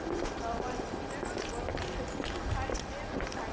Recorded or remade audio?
recorded